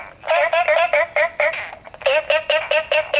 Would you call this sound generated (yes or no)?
no